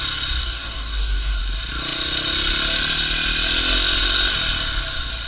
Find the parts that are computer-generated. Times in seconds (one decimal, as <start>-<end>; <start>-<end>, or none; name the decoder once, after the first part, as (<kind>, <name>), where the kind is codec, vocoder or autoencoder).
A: 0.4-1.4 (codec, DAC)